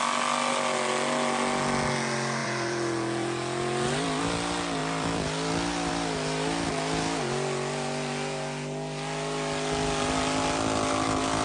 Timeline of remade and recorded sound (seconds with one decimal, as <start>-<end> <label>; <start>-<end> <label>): 0.0-2.4 recorded; 2.4-4.2 remade; 4.2-4.8 recorded; 4.8-5.9 remade; 5.9-11.4 recorded